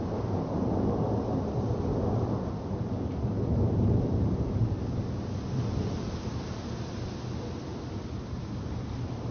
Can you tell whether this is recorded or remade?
recorded